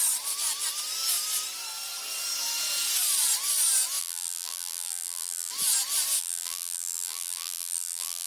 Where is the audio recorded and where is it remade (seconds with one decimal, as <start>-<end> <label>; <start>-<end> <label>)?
0.0-4.0 recorded; 4.0-5.5 remade; 5.5-6.2 recorded; 6.2-8.3 remade